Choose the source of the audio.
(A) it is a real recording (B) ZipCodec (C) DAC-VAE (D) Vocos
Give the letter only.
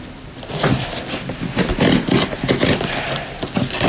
A